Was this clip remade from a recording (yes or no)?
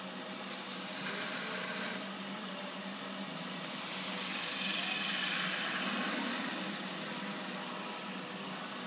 no